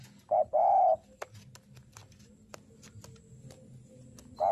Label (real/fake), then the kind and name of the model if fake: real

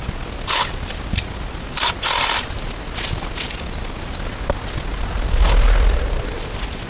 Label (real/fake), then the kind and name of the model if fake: real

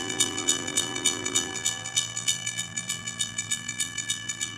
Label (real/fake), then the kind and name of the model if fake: fake, vocoder, BigVGAN v2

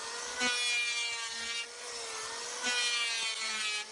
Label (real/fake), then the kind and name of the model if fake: real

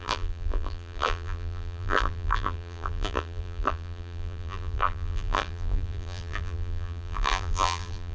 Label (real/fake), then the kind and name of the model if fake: fake, vocoder, BigVGAN v2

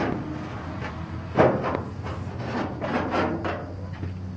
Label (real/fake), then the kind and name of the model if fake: real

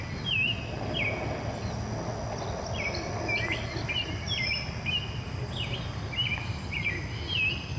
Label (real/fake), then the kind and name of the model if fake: real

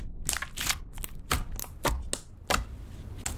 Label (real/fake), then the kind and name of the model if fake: real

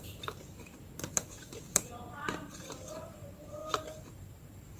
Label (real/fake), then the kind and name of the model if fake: fake, vocoder, BigVGAN v2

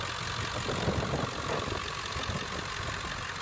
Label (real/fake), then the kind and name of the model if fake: real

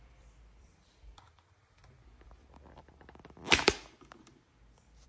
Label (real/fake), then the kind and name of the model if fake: fake, vocoder, BigVGAN v2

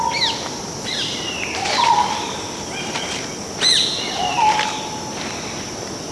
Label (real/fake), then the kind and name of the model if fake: real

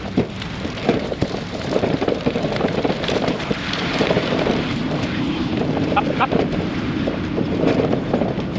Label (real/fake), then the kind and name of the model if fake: fake, vocoder, BigVGAN v2